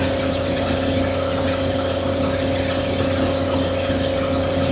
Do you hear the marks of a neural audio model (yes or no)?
no